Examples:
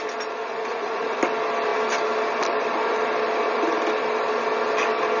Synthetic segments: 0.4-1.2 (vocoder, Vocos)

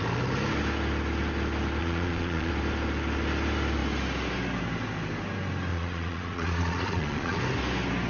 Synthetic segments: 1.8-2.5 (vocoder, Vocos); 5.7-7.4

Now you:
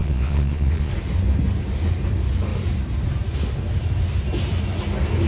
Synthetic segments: 0.0-0.9 (vocoder, Vocos)

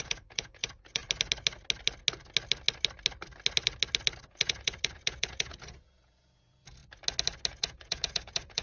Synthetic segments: 0.0-1.0 (vocoder, Vocos); 4.2-6.8; 7.5-8.6

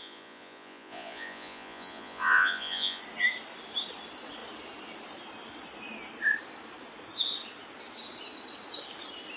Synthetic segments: 0.0-3.0 (vocoder, Vocos)

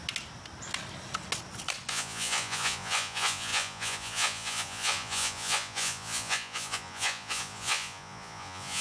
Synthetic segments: 1.9-8.8 (vocoder, Vocos)

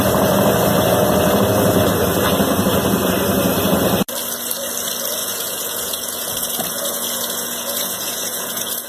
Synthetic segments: 5.2-8.9 (vocoder, Vocos)